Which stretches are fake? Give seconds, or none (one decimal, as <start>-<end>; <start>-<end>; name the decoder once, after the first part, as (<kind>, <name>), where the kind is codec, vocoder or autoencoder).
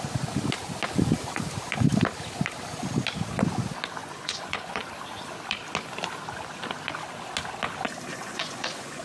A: 4.0-4.9 (vocoder, Vocos); 8.1-9.0